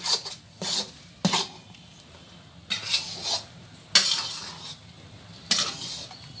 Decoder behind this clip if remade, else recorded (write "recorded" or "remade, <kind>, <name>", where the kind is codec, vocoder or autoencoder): recorded